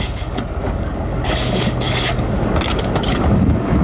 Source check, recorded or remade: remade